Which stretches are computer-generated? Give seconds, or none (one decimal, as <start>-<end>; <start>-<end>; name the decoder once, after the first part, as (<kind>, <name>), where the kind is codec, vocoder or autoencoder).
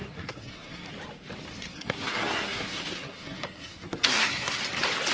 0.0-0.9 (codec, SNAC); 1.5-4.6